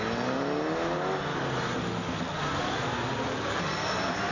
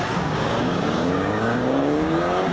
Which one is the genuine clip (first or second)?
first